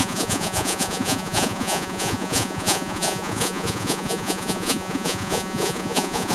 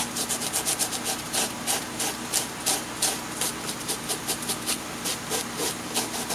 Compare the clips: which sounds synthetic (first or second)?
first